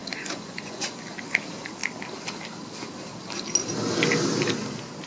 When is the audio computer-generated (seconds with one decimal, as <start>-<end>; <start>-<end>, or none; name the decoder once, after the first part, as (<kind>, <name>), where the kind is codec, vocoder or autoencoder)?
0.0-1.0 (vocoder, Vocos)